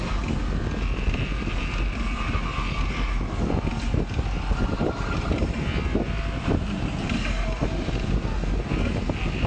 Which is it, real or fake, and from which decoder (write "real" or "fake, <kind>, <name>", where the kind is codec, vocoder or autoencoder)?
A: real